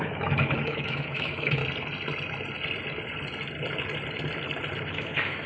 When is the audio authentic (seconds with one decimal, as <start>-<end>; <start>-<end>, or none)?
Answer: 1.6-4.9